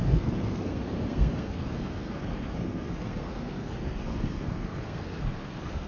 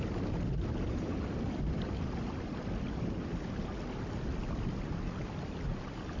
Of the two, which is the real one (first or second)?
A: second